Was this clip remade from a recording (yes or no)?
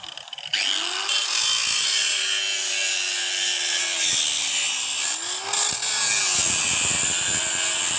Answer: no